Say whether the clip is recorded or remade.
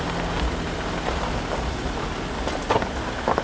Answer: recorded